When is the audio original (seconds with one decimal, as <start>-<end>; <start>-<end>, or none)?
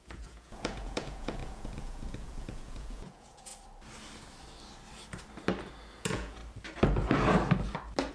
3.5-6.0; 6.4-8.1